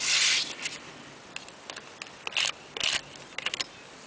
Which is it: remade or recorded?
recorded